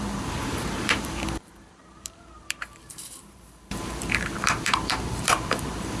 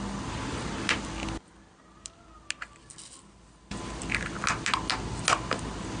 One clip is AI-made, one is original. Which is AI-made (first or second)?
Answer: first